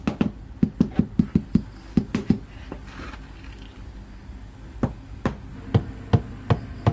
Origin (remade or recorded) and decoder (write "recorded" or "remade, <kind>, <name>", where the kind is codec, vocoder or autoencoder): recorded